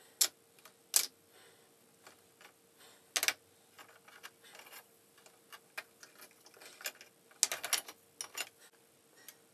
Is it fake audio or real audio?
real